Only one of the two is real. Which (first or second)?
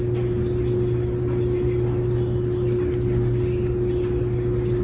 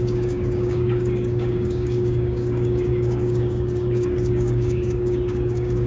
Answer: first